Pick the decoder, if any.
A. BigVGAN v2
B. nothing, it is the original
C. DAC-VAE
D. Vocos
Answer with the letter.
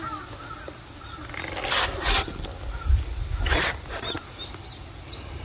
B